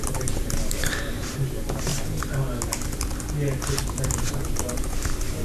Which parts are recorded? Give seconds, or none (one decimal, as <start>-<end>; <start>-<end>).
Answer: 1.9-4.1